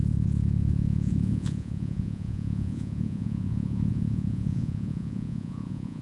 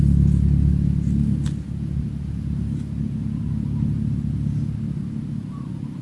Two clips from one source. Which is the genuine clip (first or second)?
second